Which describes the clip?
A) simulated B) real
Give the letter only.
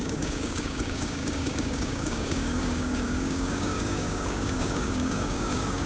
A